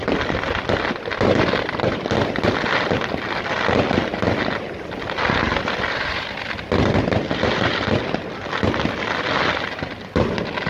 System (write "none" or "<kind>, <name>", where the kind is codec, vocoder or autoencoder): none